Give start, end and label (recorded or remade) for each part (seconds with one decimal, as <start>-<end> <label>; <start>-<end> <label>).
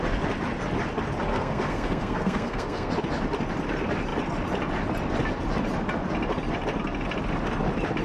0.0-1.3 recorded; 1.3-2.9 remade; 2.9-8.0 recorded